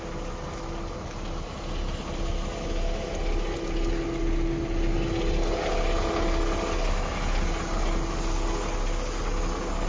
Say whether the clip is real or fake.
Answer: real